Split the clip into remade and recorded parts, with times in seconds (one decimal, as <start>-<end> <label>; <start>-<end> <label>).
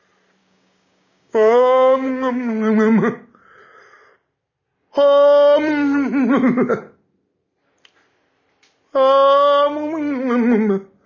0.0-0.4 recorded; 0.4-2.5 remade; 2.5-11.1 recorded